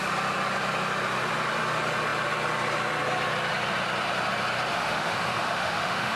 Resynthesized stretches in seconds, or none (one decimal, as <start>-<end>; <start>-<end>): 4.7-6.2